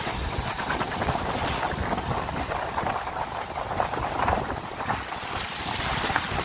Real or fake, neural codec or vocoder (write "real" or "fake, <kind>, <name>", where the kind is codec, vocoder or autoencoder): real